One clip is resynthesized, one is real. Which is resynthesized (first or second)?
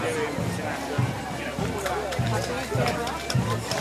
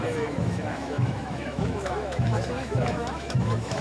second